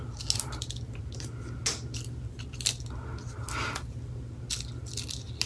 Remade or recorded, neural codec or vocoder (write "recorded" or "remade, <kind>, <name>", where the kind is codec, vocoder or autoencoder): recorded